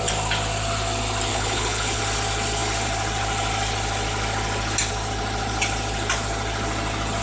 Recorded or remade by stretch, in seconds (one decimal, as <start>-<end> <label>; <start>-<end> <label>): 0.0-1.3 recorded; 1.3-2.0 remade; 2.0-7.2 recorded